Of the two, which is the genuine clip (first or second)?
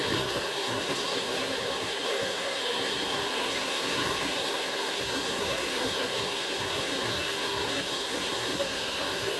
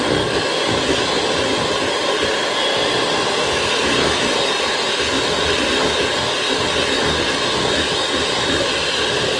second